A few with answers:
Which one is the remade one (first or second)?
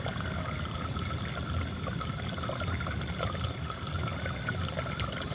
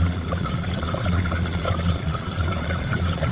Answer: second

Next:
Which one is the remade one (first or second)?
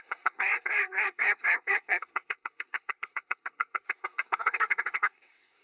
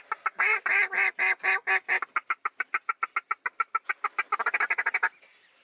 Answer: first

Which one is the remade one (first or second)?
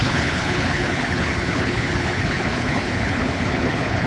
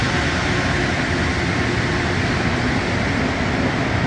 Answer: first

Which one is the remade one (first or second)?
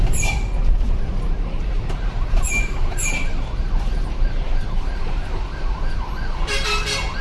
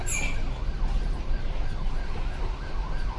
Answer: first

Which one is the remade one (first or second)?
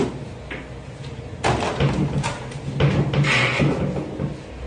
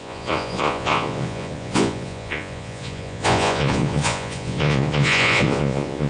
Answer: second